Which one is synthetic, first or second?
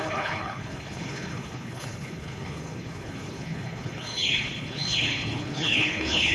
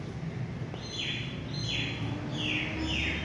first